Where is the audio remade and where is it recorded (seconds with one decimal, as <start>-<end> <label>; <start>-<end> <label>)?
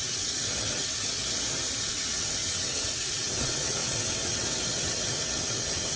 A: 0.0-1.2 remade; 1.2-1.8 recorded; 1.8-6.0 remade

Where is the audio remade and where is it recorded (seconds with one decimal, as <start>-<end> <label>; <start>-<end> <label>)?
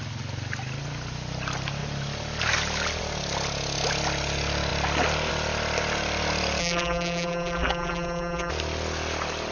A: 0.0-6.6 recorded; 6.6-8.5 remade; 8.5-9.5 recorded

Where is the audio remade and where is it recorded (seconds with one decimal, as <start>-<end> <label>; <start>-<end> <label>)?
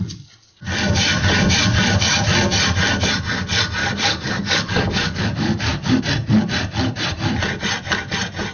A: 0.0-3.8 recorded; 3.8-6.0 remade; 6.0-8.5 recorded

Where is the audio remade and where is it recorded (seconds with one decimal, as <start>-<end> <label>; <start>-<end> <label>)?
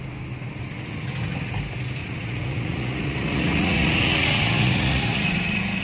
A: 0.0-2.0 recorded; 2.0-5.8 remade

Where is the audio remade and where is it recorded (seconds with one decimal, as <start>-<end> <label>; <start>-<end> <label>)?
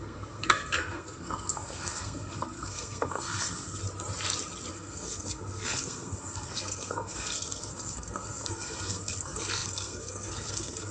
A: 0.0-3.8 remade; 3.8-4.7 recorded; 4.7-10.9 remade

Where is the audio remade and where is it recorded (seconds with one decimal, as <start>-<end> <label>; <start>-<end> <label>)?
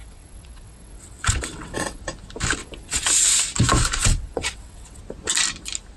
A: 0.0-2.0 remade; 2.0-2.6 recorded; 2.6-3.1 remade; 3.1-4.0 recorded; 4.0-5.0 remade; 5.0-6.0 recorded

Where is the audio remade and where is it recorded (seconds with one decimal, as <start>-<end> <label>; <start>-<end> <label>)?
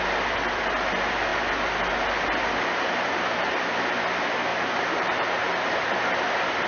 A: 0.0-4.5 recorded; 4.5-6.0 remade; 6.0-6.7 recorded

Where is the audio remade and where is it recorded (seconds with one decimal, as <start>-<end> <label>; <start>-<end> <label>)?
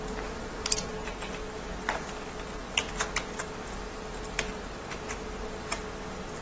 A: 0.0-6.4 recorded